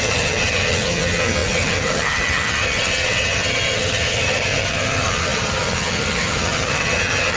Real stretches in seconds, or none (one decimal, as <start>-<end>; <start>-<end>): none